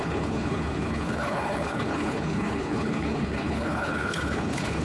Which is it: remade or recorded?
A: remade